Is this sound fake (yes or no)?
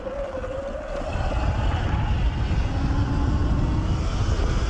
no